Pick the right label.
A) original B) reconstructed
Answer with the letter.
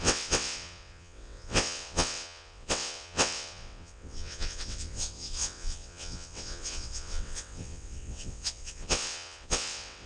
B